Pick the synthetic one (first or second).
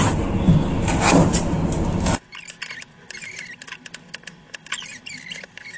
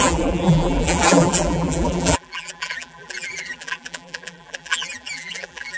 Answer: second